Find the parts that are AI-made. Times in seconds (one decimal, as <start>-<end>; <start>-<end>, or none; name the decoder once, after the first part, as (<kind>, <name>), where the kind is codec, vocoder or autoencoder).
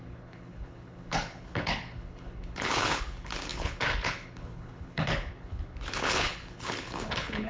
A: 0.0-7.5 (codec, HILCodec)